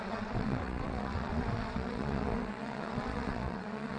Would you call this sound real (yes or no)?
no